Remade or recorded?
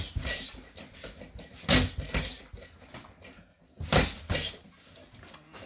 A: recorded